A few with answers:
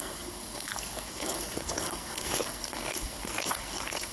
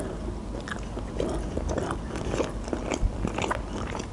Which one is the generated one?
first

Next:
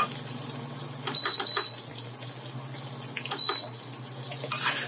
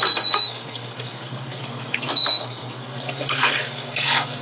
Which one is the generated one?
second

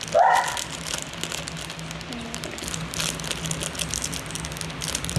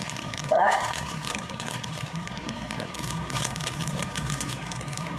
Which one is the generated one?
second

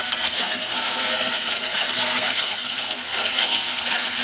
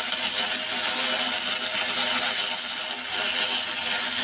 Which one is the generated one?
first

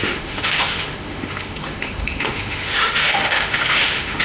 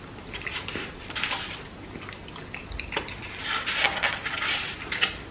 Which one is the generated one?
first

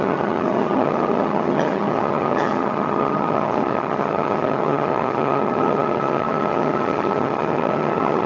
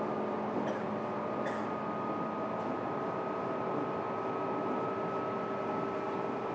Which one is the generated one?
first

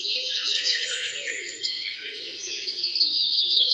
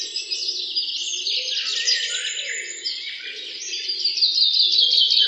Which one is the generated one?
first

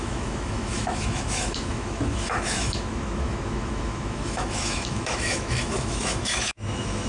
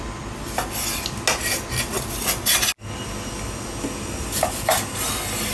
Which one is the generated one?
first